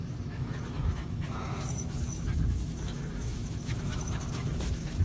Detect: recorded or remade remade